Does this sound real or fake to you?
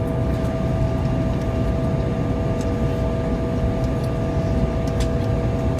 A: real